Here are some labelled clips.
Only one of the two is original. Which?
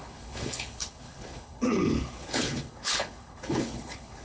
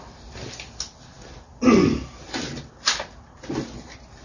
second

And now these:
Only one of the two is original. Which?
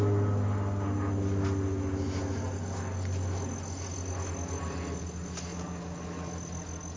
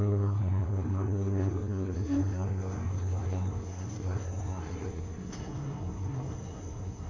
first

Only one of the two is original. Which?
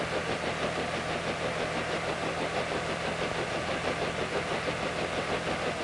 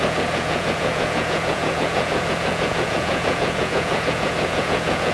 first